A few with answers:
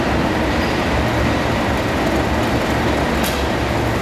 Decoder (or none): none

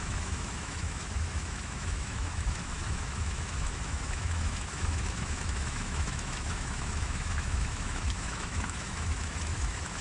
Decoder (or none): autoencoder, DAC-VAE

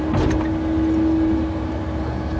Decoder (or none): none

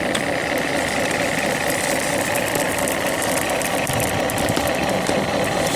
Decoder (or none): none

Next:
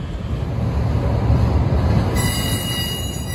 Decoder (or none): none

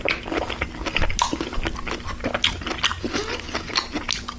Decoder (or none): none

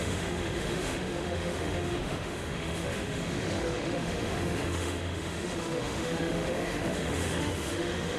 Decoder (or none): autoencoder, DAC-VAE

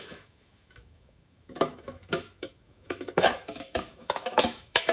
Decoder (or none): autoencoder, DAC-VAE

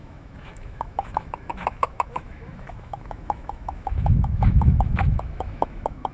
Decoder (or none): autoencoder, DAC-VAE